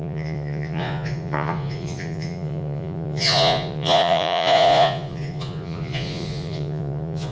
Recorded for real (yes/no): no